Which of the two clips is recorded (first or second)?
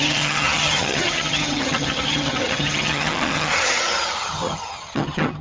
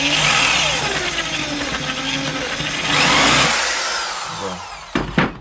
second